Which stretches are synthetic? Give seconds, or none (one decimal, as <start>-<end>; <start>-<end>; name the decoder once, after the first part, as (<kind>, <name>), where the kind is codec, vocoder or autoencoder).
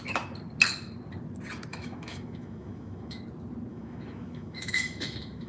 1.7-3.2 (autoencoder, DAC-VAE); 3.7-5.5